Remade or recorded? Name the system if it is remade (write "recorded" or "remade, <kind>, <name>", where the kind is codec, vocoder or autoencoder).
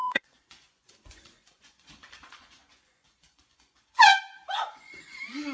remade, vocoder, Vocos